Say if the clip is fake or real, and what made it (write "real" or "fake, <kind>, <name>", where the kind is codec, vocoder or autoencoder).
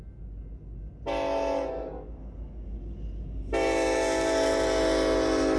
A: real